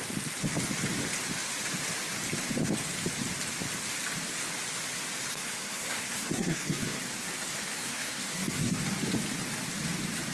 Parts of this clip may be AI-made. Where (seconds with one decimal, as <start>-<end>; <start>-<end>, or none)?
5.3-7.0; 7.8-8.8